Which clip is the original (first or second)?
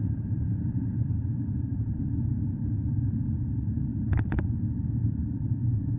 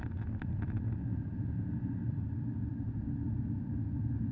second